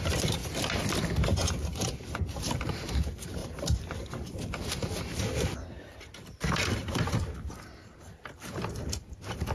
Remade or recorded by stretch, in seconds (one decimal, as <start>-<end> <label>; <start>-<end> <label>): 0.0-0.4 remade; 0.4-1.5 recorded; 1.5-3.4 remade; 3.4-7.9 recorded; 7.9-9.5 remade